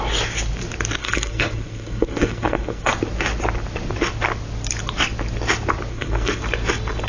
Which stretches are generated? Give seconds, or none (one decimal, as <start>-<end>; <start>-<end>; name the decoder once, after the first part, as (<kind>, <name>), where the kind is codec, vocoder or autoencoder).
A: 1.0-2.9 (codec, SNAC); 5.9-6.4